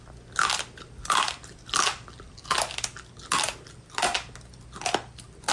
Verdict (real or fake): real